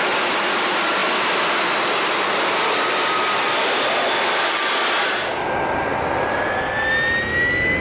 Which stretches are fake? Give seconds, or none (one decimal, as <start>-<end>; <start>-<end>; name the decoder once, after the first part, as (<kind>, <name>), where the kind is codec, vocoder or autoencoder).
none